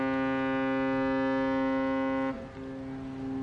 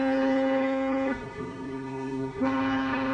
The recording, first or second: first